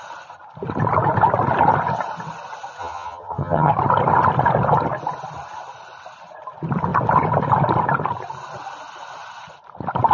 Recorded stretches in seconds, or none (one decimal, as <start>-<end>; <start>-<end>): 0.0-2.8; 3.7-10.1